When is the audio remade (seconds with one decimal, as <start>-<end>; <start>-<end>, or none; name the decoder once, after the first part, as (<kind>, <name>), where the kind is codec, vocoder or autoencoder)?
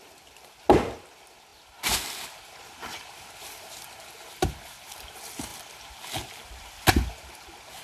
none